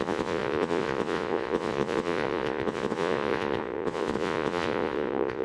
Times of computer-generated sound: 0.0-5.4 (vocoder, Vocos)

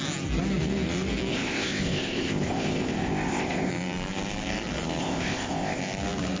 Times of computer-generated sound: 1.3-3.7 (codec, ZipCodec); 5.0-5.8